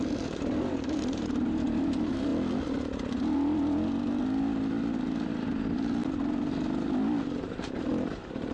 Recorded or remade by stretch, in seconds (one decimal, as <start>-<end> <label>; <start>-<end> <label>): 0.0-2.3 remade; 2.3-7.4 recorded; 7.4-8.5 remade

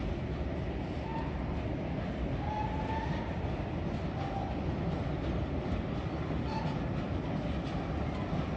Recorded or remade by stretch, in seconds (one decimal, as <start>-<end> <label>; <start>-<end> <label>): 0.0-8.6 recorded

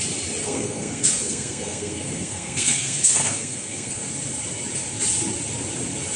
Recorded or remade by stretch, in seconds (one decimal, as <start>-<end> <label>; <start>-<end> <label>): 0.0-0.4 recorded; 0.4-4.1 remade; 4.1-6.2 recorded

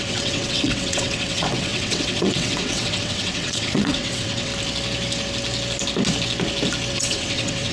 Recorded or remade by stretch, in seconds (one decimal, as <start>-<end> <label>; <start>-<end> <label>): 0.0-4.5 remade; 4.5-6.9 recorded; 6.9-7.7 remade

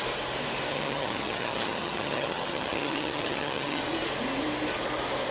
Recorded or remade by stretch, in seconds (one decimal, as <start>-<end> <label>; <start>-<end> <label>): 0.0-0.7 recorded; 0.7-3.8 remade; 3.8-5.3 recorded

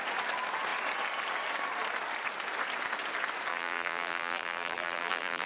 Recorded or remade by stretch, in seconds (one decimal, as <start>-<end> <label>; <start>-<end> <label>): 0.0-3.5 recorded; 3.5-5.5 remade

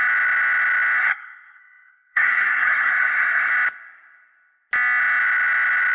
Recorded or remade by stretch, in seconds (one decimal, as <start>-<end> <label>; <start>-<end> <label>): 0.0-1.0 recorded; 1.0-3.5 remade; 3.5-5.9 recorded

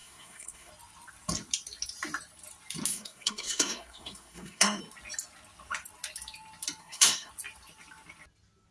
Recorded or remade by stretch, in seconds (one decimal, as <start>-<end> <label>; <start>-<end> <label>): 0.0-0.7 remade; 0.7-2.9 recorded; 2.9-4.8 remade; 4.8-6.8 recorded; 6.8-7.3 remade; 7.3-8.7 recorded